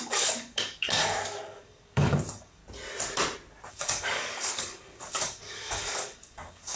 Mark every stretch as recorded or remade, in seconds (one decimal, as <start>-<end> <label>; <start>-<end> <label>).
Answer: 0.0-2.6 remade; 2.6-3.7 recorded; 3.7-6.8 remade